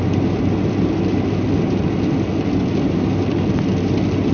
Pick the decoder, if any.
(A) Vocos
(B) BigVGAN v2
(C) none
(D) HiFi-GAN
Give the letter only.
C